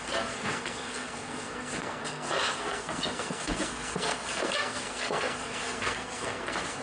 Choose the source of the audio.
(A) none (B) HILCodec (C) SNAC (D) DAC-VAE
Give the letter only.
C